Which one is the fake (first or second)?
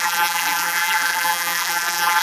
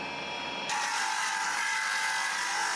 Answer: first